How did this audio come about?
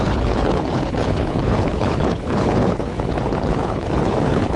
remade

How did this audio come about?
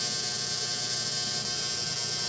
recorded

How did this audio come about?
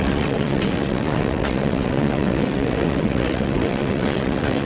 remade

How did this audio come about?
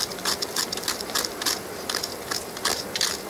recorded